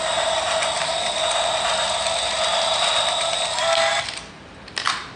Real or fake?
real